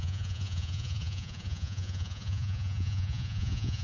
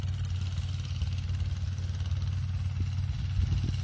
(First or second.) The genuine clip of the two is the second